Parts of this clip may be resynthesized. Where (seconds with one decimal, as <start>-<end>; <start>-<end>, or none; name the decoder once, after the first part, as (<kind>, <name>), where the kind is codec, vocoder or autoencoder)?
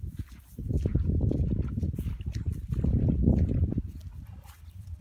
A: none